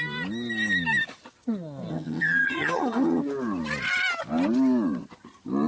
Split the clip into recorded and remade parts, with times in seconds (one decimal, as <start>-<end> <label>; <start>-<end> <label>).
0.0-1.9 recorded; 1.9-3.2 remade; 3.2-5.7 recorded